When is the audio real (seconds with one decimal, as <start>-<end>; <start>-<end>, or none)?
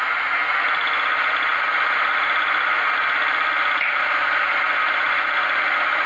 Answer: 0.0-6.1